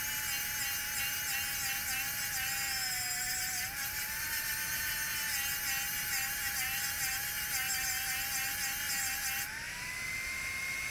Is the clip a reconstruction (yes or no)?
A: no